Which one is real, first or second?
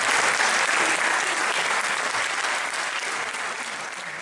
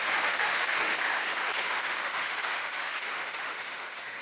first